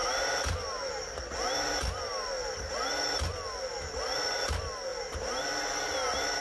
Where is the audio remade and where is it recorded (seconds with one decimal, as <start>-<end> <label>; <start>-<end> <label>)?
0.0-6.4 recorded